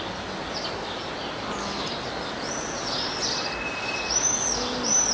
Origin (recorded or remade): recorded